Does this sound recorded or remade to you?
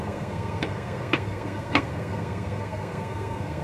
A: remade